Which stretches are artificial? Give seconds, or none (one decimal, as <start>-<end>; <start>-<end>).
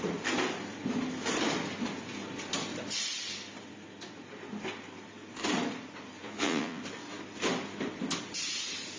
6.2-6.8